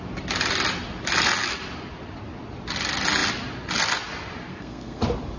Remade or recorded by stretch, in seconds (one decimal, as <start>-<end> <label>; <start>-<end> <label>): 0.0-4.5 recorded; 4.5-5.0 remade; 5.0-5.4 recorded